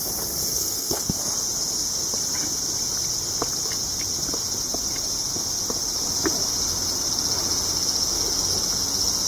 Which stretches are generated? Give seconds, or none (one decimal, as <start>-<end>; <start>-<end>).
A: 0.5-1.1